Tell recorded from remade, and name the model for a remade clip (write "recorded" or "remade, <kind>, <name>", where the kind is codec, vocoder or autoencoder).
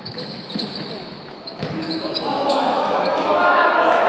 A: remade, autoencoder, DAC-VAE